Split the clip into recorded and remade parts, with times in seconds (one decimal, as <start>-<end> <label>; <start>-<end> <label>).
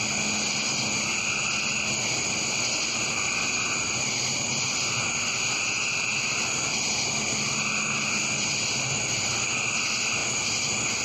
0.0-11.0 recorded